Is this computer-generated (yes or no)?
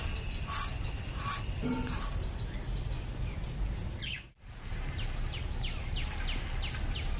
no